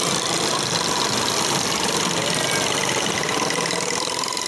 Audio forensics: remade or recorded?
recorded